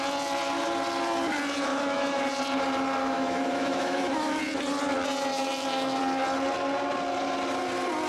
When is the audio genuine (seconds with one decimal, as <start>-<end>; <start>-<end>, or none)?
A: 0.0-1.7; 2.3-3.0; 4.4-5.3; 6.0-8.1